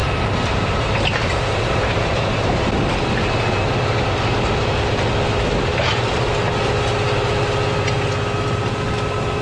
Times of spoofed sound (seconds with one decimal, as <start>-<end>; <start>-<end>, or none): 0.0-2.7; 5.7-6.3